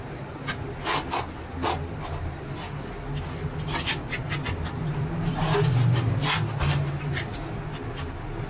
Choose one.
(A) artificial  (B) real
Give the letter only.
B